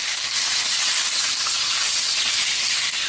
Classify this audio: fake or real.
real